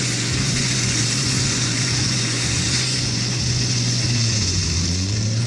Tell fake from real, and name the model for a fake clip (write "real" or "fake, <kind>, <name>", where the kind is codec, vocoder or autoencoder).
fake, vocoder, Vocos